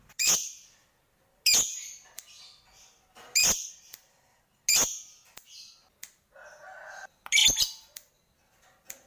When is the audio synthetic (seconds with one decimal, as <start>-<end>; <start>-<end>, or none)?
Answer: none